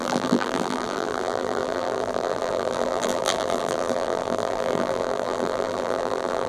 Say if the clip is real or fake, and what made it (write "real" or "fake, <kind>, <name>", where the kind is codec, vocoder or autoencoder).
fake, vocoder, BigVGAN v2